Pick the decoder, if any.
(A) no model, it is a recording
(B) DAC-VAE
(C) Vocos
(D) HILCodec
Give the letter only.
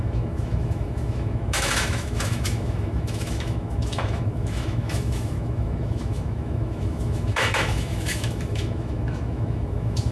B